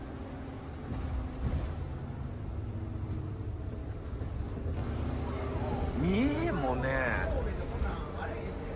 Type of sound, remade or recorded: recorded